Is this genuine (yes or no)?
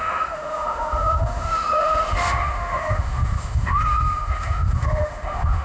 no